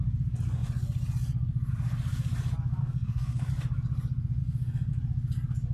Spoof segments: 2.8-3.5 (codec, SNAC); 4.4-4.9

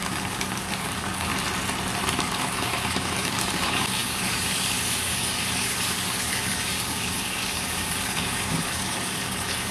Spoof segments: 0.0-1.3 (codec, DAC); 2.2-9.7

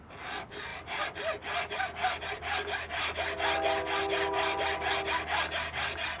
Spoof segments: none